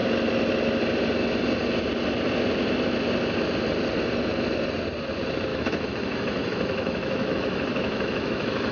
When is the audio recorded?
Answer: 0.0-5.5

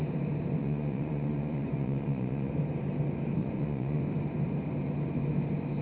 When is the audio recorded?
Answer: 0.0-0.6; 2.5-3.4; 4.0-5.8

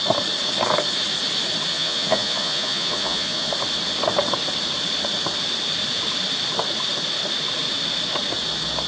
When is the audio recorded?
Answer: 0.0-1.7; 3.5-8.9